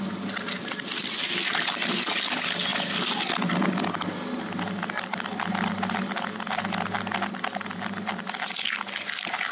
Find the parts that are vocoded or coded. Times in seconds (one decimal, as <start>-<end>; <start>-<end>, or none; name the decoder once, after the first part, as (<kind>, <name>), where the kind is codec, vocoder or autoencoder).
none